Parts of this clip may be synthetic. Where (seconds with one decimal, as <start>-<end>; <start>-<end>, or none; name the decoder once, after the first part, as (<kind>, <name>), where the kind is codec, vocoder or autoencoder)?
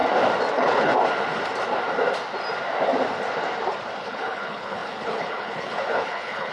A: 0.5-0.9 (codec, HILCodec); 4.0-6.5